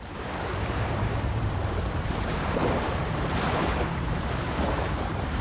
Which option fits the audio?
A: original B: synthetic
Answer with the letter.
B